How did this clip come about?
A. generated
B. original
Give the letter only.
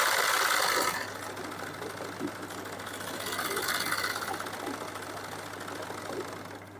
B